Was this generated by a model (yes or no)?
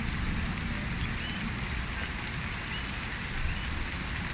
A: no